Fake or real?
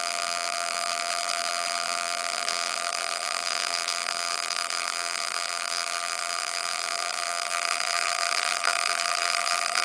fake